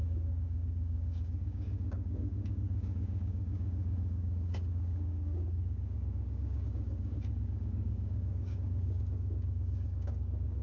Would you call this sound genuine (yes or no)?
no